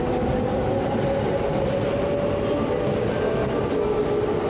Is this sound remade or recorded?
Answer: recorded